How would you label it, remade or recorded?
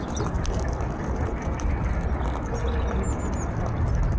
recorded